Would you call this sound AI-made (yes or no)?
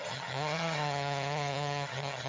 yes